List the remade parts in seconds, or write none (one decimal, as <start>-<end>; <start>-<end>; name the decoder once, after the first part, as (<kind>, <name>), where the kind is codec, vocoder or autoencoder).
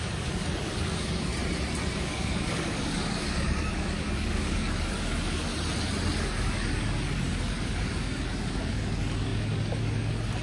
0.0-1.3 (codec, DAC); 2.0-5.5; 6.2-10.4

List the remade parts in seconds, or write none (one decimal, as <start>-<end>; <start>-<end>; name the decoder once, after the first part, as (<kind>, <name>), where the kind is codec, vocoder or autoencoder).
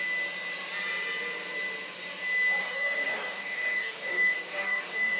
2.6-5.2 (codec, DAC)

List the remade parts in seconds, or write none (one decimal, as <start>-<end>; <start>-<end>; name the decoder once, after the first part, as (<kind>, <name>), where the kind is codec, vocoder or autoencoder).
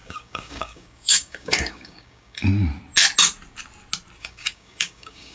0.0-2.4 (codec, DAC); 4.2-5.3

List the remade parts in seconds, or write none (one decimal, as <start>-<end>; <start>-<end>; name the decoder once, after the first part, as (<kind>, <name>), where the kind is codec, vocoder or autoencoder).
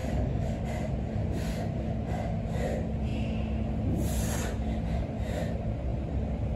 0.0-0.6 (codec, DAC)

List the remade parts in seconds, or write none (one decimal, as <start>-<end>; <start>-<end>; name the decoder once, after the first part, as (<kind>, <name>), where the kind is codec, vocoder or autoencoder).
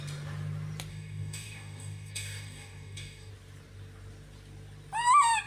0.9-3.3 (codec, DAC)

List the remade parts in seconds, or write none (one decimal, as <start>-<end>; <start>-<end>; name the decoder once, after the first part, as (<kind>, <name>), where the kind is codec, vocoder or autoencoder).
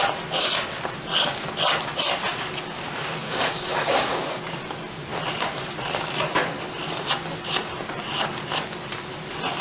3.2-4.4 (codec, DAC)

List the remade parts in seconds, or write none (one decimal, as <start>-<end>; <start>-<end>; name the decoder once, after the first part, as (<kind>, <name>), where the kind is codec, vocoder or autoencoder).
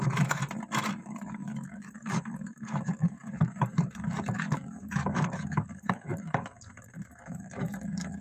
0.0-0.4 (codec, DAC); 1.0-8.2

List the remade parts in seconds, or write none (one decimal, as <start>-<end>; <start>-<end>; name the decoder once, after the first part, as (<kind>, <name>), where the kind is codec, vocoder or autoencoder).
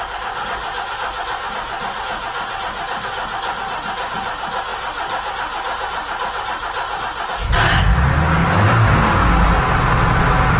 none